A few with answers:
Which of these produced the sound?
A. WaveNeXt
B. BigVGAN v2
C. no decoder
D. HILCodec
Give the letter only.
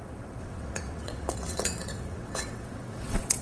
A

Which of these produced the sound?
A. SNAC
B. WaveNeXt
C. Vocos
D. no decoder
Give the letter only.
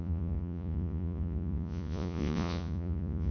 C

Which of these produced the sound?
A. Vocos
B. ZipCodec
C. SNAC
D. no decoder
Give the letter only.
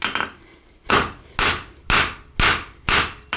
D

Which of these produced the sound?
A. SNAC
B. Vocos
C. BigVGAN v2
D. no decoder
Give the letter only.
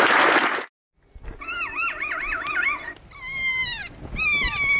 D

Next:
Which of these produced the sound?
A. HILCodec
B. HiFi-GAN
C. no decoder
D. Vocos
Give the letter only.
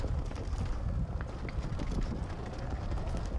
C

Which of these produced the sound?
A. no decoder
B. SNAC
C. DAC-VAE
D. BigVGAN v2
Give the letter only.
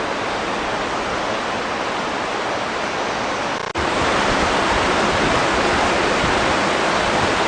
A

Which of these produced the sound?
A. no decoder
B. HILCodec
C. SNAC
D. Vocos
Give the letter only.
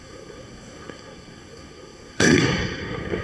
C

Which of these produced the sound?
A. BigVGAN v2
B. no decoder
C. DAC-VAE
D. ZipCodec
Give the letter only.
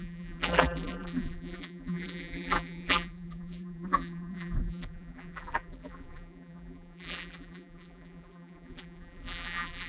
A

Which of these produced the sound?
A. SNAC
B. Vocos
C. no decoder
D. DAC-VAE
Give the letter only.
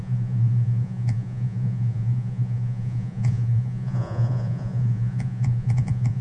B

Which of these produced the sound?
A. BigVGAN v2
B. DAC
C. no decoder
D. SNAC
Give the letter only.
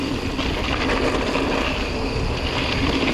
C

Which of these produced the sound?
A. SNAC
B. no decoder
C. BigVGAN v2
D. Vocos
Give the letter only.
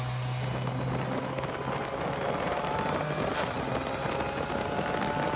B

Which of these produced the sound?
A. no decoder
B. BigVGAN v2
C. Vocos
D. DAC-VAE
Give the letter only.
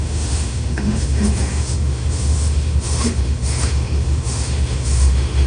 D